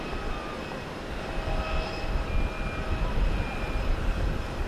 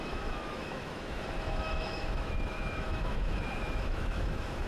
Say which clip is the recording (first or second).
first